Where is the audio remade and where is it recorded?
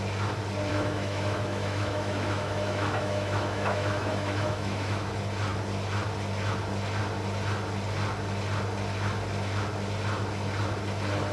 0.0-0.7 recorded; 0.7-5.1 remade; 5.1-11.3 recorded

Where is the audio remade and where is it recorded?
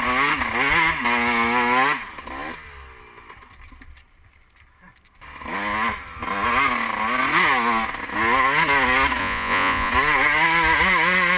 0.0-9.2 recorded; 9.2-9.9 remade; 9.9-11.4 recorded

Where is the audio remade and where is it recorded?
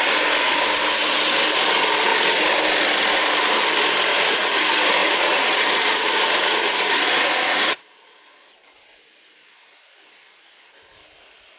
0.0-4.1 recorded; 4.1-4.6 remade; 4.6-5.0 recorded; 5.0-7.8 remade; 7.8-11.6 recorded